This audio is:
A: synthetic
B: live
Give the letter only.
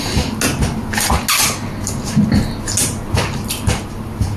B